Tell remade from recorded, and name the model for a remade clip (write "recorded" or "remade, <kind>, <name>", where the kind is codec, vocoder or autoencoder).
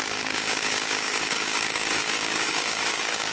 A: remade, codec, DAC